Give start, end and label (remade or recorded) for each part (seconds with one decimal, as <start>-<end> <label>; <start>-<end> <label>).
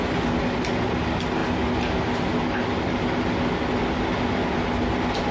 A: 0.0-5.3 recorded